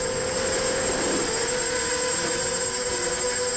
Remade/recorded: recorded